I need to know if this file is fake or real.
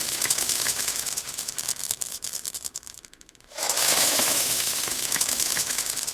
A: fake